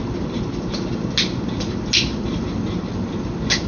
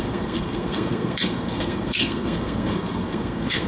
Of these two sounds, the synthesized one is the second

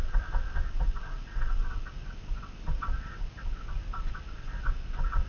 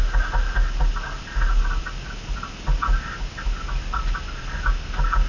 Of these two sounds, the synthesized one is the first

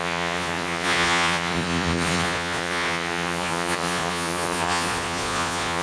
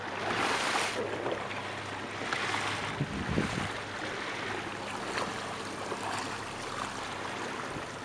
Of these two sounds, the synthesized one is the first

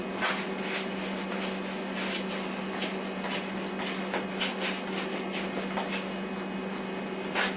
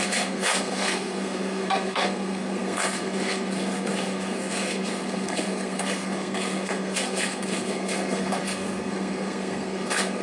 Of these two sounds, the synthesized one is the second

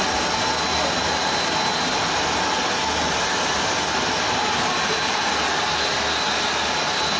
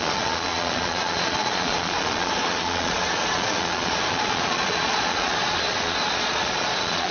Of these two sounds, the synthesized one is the second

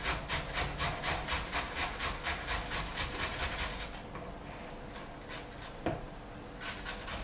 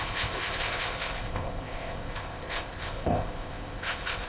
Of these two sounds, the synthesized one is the second